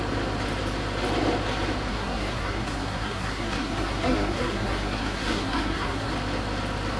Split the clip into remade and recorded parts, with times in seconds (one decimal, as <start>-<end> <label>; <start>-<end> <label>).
0.0-1.9 recorded; 1.9-6.1 remade; 6.1-7.0 recorded